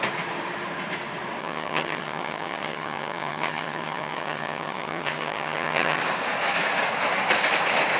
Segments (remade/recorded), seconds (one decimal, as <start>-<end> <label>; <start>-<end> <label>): 0.0-1.4 recorded; 1.4-6.0 remade; 6.0-8.0 recorded

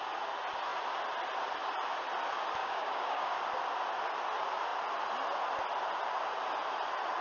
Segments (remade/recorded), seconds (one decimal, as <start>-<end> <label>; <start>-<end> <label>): 0.0-2.6 recorded; 2.6-3.4 remade; 3.4-7.2 recorded